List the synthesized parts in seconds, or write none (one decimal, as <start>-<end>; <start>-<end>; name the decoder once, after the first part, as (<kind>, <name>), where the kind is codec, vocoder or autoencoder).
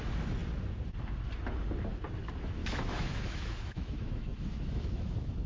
2.6-5.5 (autoencoder, DAC-VAE)